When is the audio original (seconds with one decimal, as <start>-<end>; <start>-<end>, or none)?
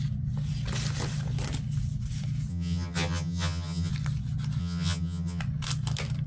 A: 0.0-2.5; 3.9-4.6; 5.4-6.3